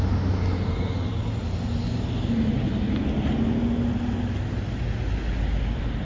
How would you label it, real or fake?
real